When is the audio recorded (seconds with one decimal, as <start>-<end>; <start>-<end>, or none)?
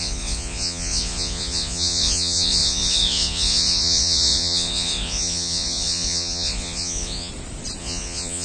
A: 7.3-7.8